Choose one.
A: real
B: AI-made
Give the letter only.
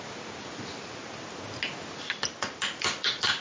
A